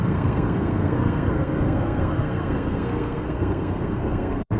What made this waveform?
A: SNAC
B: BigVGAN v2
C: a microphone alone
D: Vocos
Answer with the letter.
A